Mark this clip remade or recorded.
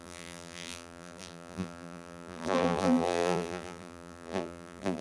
remade